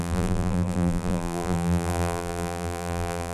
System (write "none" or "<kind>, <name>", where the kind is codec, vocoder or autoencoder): vocoder, BigVGAN v2